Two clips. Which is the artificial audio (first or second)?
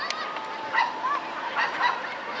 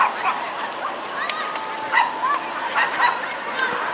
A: first